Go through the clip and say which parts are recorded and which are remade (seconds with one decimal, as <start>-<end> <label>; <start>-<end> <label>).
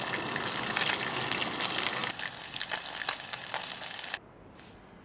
0.0-5.0 recorded